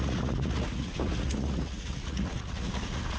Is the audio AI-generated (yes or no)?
yes